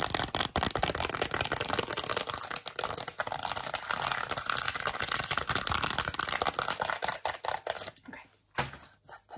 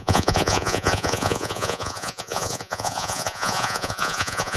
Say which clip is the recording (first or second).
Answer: first